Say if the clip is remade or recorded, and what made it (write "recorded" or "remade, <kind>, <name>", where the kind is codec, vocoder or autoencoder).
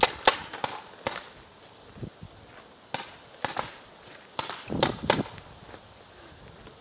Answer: recorded